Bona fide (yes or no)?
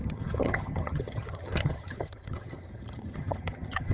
no